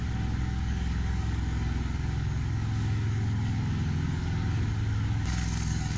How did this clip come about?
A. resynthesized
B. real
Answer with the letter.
A